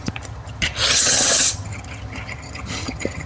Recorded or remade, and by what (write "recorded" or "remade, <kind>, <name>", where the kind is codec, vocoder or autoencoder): remade, vocoder, HiFi-GAN